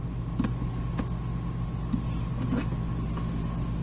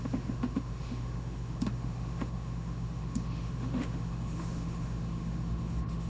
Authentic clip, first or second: first